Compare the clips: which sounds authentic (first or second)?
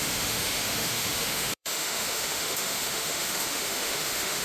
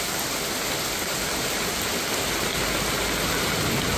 second